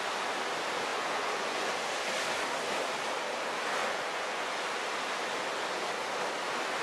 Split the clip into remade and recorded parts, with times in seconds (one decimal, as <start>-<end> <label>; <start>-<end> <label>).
0.0-0.9 recorded; 0.9-1.7 remade; 1.7-3.8 recorded; 3.8-4.7 remade; 4.7-6.8 recorded